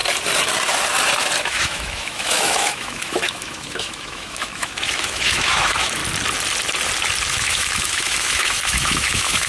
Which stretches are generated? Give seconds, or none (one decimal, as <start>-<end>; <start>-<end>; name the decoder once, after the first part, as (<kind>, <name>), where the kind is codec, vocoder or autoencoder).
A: 1.4-6.0 (autoencoder, DAC-VAE); 7.3-9.5